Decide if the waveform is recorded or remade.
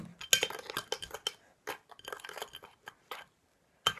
recorded